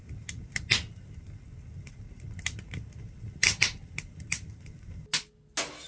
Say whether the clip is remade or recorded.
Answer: recorded